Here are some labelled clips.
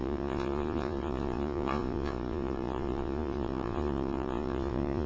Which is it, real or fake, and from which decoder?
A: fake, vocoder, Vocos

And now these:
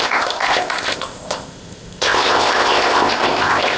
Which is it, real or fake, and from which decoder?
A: fake, codec, ZipCodec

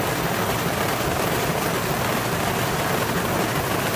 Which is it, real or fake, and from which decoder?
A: real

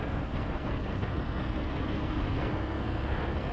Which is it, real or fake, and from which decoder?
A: fake, codec, SNAC